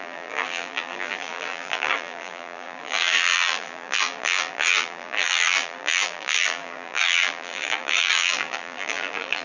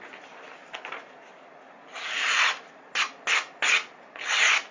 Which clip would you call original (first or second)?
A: second